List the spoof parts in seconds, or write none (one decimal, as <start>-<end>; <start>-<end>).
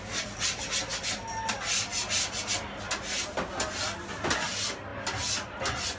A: none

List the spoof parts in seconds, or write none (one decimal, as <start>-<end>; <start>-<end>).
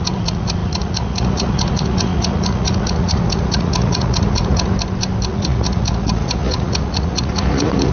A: 0.0-4.7; 5.3-7.9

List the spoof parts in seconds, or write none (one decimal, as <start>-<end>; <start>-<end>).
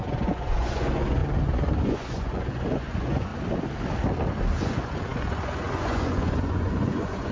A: 0.0-1.2; 1.8-3.3; 4.6-7.3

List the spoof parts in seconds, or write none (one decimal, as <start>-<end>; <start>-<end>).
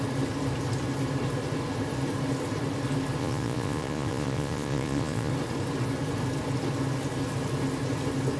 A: 3.2-5.3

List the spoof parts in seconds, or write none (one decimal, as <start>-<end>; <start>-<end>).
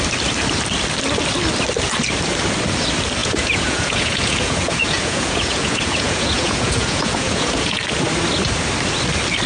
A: 3.2-7.8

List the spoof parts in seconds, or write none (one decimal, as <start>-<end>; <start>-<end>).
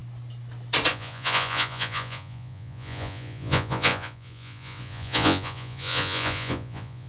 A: 0.9-7.1